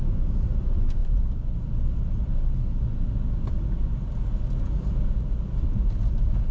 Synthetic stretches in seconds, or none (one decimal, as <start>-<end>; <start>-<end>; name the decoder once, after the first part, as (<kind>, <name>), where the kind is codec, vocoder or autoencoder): none

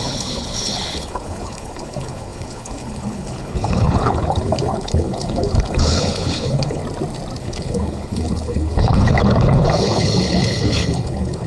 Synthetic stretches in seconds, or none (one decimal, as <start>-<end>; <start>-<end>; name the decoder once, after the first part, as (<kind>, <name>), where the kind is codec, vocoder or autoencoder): 0.0-6.8 (codec, HILCodec); 7.4-11.5

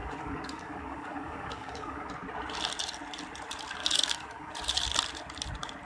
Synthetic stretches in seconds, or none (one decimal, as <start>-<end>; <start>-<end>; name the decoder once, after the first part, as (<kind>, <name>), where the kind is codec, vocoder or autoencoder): 0.0-2.1 (codec, DAC); 3.8-4.5